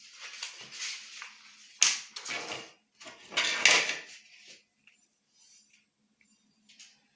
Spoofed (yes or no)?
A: no